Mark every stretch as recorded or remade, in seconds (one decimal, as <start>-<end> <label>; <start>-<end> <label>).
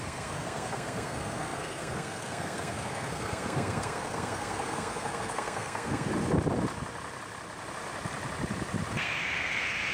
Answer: 0.0-6.1 remade; 6.1-8.9 recorded; 8.9-9.9 remade